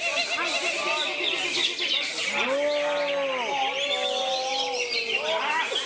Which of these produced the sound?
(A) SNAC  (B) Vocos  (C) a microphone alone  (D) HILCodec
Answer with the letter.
C